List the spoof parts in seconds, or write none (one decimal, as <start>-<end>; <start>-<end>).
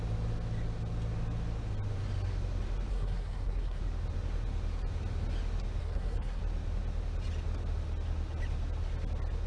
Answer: 2.9-3.8; 5.8-6.4